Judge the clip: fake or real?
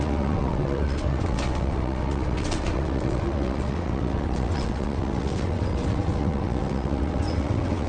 fake